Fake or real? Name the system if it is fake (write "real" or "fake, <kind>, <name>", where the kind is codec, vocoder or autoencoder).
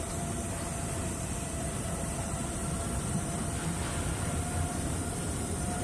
fake, vocoder, BigVGAN v2